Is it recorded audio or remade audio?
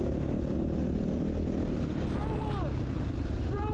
recorded